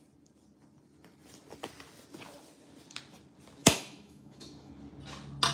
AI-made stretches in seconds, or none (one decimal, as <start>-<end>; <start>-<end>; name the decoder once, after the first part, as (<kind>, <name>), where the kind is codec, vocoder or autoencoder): 3.6-4.7 (autoencoder, DAC-VAE)